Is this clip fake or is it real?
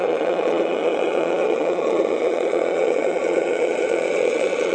fake